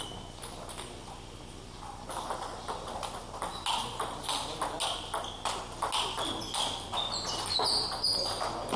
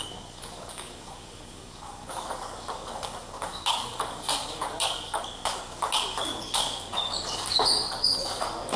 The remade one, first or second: second